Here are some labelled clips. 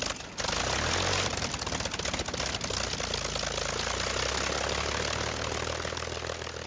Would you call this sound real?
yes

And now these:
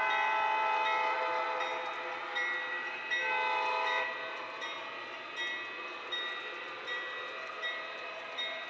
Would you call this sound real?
yes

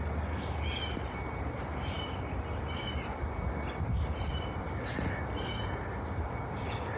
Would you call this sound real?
yes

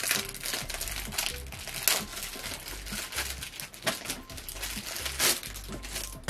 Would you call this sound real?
yes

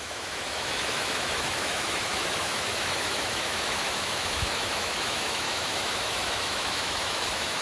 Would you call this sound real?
no